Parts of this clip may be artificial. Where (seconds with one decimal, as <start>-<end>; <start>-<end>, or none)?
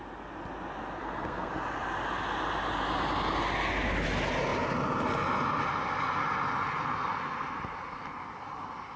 1.0-1.5